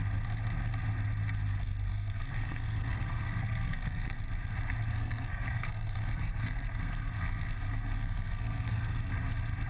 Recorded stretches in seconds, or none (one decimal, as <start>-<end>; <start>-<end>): 0.0-1.9; 4.2-4.9; 9.1-9.7